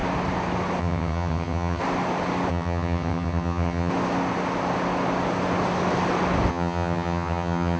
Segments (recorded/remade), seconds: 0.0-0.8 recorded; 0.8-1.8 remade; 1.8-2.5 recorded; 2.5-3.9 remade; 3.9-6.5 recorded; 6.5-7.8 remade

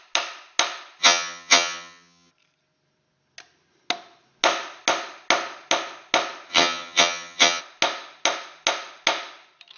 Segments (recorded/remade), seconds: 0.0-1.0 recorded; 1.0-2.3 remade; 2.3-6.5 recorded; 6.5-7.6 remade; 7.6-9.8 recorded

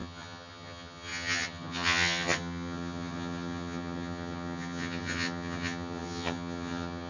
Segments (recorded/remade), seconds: 0.0-7.1 remade

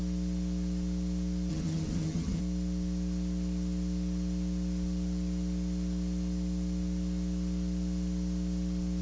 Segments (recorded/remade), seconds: 0.0-1.5 recorded; 1.5-2.4 remade; 2.4-9.0 recorded

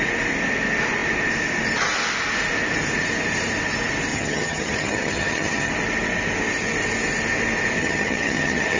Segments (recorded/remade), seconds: 0.0-4.1 recorded; 4.1-5.7 remade; 5.7-7.8 recorded; 7.8-8.8 remade

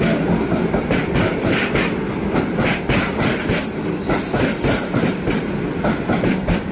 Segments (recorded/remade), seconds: 0.0-6.7 recorded

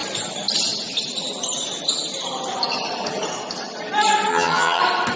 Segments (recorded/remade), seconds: 0.0-4.3 recorded; 4.3-4.8 remade; 4.8-5.2 recorded

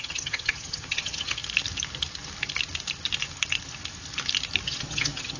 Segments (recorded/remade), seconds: 0.0-1.4 remade; 1.4-4.6 recorded; 4.6-5.4 remade